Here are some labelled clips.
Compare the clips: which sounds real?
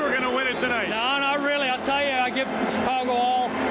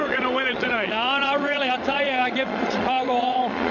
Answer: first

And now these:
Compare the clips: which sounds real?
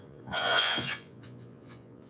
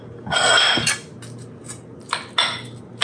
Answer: second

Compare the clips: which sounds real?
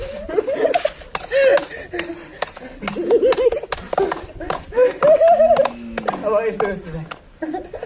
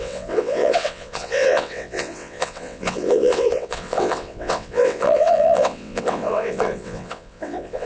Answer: first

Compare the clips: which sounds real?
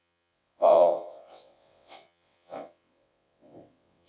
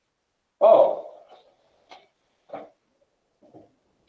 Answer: second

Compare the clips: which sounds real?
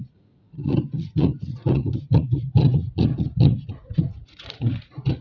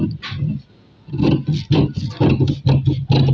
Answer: second